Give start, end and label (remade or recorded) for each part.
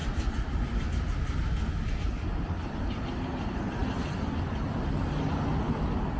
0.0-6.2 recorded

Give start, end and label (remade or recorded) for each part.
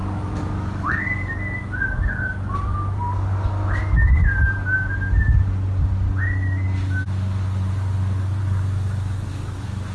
0.0-4.2 remade; 4.2-8.4 recorded; 8.4-9.9 remade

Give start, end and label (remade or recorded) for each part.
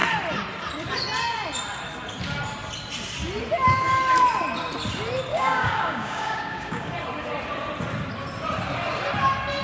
0.0-5.3 recorded; 5.3-6.9 remade; 6.9-9.6 recorded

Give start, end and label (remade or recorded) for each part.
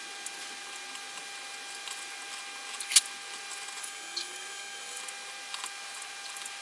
0.0-3.8 recorded; 3.8-5.0 remade; 5.0-6.6 recorded